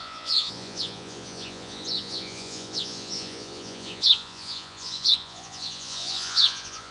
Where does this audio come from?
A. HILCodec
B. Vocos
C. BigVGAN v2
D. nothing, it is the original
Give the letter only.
B